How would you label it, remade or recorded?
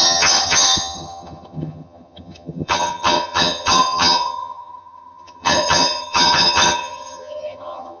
remade